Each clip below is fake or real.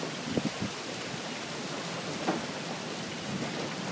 fake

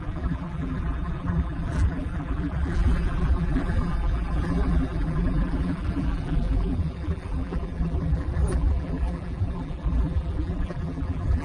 fake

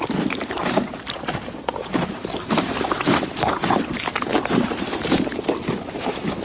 fake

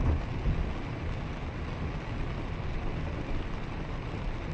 real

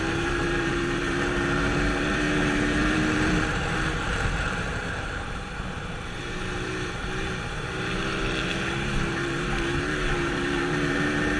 fake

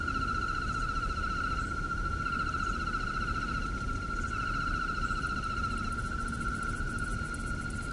real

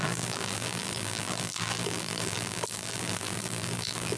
fake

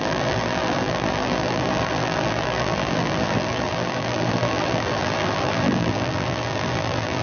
fake